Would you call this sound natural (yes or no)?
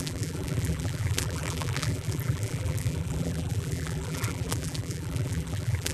no